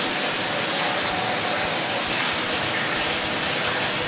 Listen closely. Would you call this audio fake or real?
real